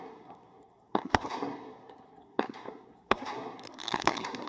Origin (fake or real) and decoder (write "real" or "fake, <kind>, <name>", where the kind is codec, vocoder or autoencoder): fake, codec, SNAC